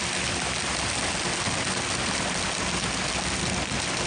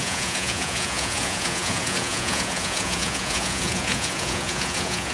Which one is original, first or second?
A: first